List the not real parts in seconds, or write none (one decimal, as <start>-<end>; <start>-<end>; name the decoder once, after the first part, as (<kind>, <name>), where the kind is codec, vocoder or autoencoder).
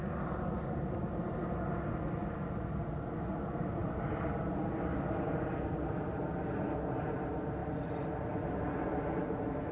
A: 3.8-6.2 (vocoder, BigVGAN v2); 7.6-8.6